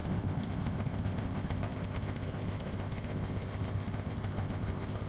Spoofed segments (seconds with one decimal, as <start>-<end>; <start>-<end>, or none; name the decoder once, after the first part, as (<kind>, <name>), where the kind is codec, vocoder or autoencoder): 0.0-5.1 (codec, ZipCodec)